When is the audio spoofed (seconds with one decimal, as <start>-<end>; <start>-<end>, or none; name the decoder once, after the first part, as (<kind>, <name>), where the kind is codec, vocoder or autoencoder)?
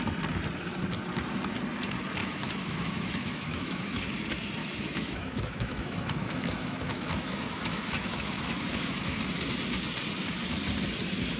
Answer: 2.2-4.0 (autoencoder, DAC-VAE); 4.6-9.2